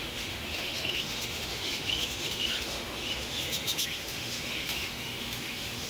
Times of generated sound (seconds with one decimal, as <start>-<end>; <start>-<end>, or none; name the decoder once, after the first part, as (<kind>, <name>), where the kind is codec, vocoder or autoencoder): 0.0-5.9 (autoencoder, DAC-VAE)